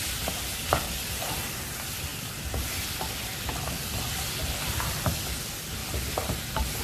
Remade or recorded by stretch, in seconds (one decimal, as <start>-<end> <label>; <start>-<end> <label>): 0.0-6.8 recorded